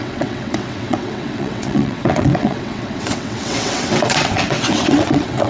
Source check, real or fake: fake